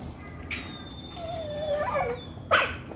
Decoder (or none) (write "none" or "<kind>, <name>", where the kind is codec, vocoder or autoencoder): vocoder, BigVGAN v2